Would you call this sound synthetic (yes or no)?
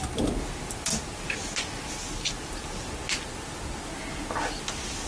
no